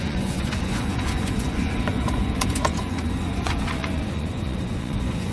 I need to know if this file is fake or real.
fake